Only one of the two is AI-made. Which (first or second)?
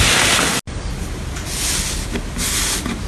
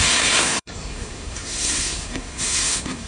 second